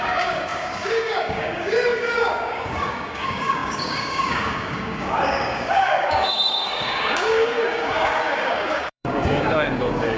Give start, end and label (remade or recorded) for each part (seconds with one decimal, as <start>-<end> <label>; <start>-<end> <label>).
0.0-10.2 remade